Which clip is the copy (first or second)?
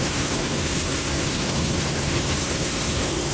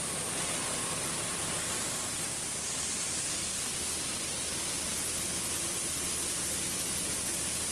first